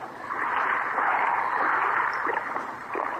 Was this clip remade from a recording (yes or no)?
yes